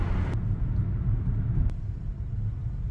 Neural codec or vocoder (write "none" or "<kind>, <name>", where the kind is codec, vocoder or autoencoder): none